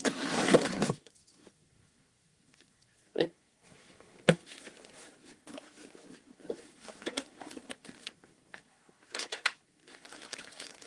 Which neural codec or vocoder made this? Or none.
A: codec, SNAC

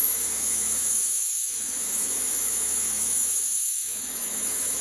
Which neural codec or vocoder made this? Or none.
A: autoencoder, DAC-VAE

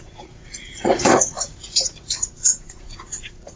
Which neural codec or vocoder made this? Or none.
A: vocoder, Vocos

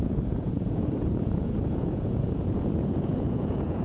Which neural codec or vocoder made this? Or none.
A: vocoder, Vocos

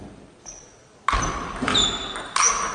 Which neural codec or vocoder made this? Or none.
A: none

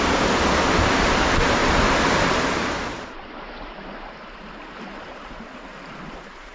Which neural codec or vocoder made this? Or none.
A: vocoder, BigVGAN v2